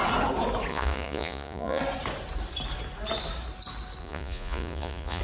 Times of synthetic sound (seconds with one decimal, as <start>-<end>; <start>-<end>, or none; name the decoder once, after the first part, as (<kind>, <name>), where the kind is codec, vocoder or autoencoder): 0.7-1.8 (vocoder, Vocos); 4.0-5.2